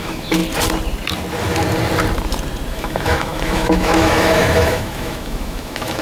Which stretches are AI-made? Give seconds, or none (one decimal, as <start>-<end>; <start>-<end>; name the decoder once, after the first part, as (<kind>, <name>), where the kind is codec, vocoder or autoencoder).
0.0-0.4 (autoencoder, DAC-VAE); 2.7-6.0